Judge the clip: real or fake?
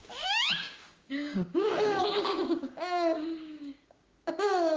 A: fake